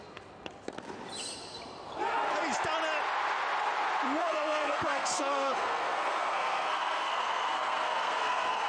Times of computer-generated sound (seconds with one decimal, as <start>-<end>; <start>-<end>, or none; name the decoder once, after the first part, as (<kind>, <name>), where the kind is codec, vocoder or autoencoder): 4.2-8.7 (codec, SNAC)